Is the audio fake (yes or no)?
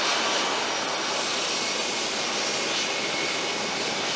no